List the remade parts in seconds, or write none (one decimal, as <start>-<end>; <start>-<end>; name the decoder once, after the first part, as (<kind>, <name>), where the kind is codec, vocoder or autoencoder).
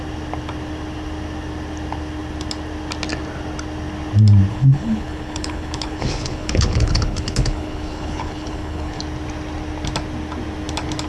4.5-9.0 (codec, HILCodec)